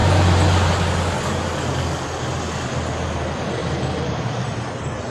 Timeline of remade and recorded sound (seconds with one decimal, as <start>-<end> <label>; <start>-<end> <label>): 0.0-3.6 recorded; 3.6-5.1 remade